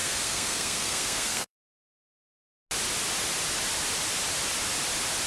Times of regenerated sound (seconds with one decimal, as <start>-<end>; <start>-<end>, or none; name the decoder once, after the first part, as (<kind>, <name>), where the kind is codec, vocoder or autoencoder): 0.0-2.6 (codec, SNAC)